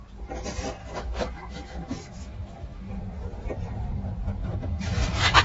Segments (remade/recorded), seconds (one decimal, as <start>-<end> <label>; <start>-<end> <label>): 0.0-0.8 recorded; 0.8-2.9 remade; 2.9-4.4 recorded; 4.4-5.4 remade

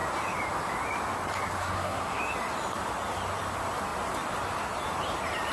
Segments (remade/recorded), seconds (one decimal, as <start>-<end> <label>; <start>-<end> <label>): 0.0-1.6 recorded; 1.6-2.2 remade; 2.2-5.5 recorded

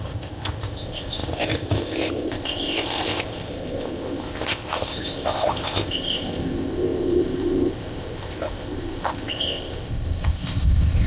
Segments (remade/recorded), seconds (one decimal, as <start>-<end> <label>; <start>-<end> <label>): 0.0-11.1 remade

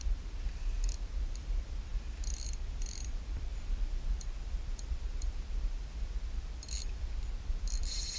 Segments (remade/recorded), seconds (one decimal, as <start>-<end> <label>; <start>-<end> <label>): 0.0-1.9 remade; 1.9-2.7 recorded; 2.7-8.2 remade

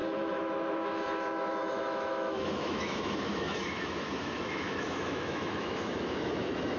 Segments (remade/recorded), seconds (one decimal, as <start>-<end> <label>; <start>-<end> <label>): 0.0-6.8 remade

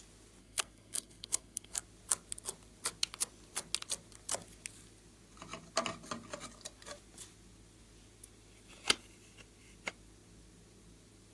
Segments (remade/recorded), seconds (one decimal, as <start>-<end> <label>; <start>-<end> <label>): 0.0-0.4 recorded; 0.4-1.8 remade; 1.8-11.3 recorded

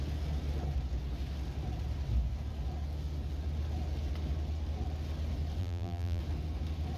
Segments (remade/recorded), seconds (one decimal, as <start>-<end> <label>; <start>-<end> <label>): 0.0-5.6 recorded; 5.6-6.2 remade; 6.2-7.0 recorded